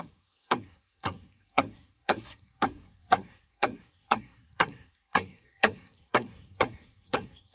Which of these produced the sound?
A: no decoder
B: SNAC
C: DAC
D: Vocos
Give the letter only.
B